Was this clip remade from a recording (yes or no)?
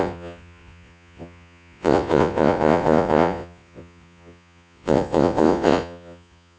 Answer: yes